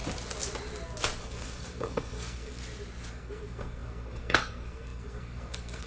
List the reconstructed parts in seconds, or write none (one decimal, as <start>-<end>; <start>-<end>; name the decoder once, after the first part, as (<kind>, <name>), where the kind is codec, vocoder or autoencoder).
1.2-2.6 (codec, SNAC); 3.1-5.9